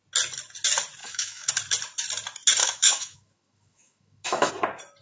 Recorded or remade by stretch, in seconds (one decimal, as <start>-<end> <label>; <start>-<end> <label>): 0.0-1.0 recorded; 1.0-1.5 remade; 1.5-2.6 recorded; 2.6-4.5 remade; 4.5-5.0 recorded